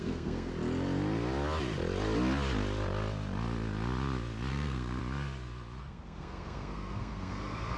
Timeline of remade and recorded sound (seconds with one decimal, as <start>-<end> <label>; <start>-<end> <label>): 0.0-0.5 remade; 0.5-4.5 recorded; 4.5-5.0 remade; 5.0-5.8 recorded; 5.8-7.8 remade